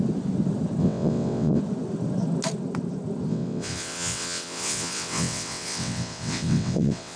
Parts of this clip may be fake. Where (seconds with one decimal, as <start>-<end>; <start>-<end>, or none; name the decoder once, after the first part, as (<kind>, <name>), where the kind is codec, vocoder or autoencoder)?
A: 0.8-1.6 (vocoder, WaveNeXt); 3.3-7.2